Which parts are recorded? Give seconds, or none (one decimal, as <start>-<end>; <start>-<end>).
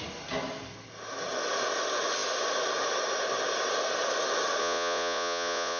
0.0-4.6